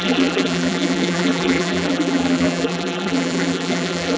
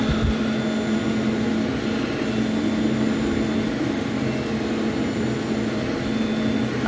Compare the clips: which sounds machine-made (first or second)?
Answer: first